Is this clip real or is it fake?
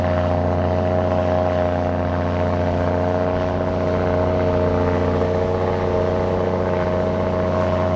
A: real